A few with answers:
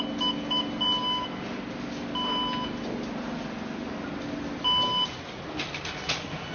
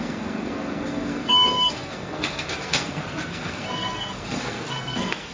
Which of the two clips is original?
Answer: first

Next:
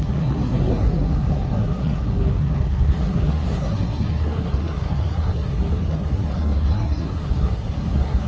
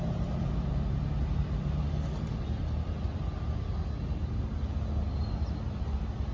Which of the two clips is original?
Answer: second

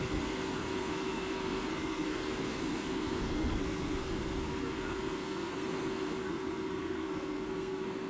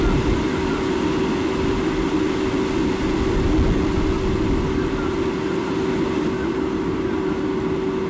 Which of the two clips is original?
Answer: second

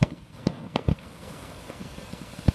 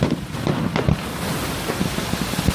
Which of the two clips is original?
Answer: second